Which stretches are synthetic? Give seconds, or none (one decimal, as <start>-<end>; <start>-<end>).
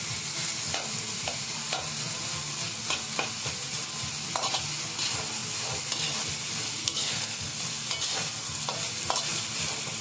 6.8-7.6